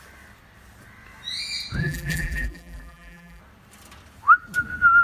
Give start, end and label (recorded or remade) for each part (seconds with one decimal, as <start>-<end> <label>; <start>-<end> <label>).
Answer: 0.0-1.8 recorded; 1.8-3.4 remade; 3.4-5.0 recorded